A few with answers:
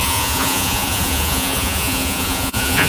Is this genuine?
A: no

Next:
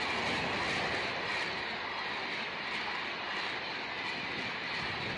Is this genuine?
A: yes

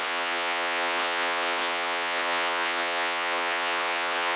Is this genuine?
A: no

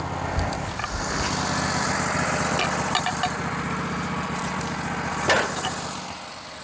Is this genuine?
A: yes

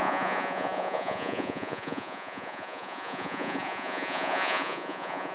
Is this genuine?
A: no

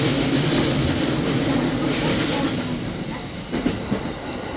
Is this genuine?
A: yes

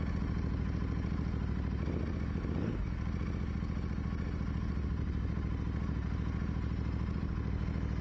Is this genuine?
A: yes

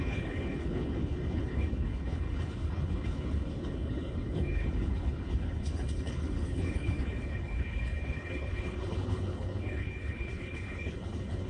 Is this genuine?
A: no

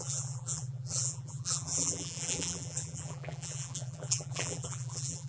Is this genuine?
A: no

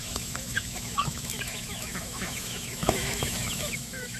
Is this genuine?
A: no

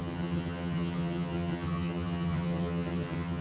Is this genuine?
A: no